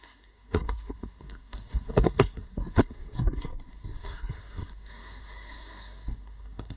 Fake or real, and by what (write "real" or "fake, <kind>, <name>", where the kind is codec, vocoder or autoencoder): fake, codec, SNAC